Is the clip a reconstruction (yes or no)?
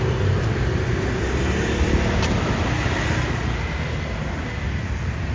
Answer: no